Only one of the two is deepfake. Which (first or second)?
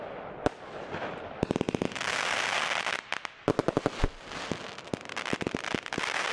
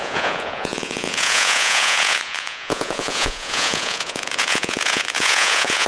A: second